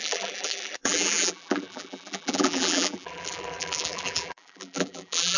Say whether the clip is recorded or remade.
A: remade